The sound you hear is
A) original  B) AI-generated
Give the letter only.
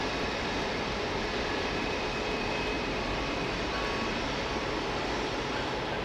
A